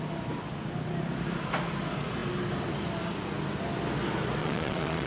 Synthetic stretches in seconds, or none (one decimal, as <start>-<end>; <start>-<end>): 4.4-5.1